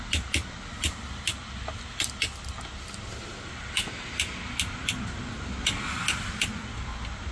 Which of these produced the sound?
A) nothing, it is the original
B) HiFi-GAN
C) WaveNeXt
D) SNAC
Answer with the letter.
A